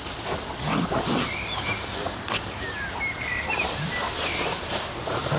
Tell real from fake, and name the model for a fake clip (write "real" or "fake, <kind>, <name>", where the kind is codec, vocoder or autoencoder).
real